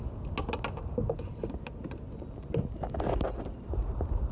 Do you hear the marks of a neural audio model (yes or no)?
no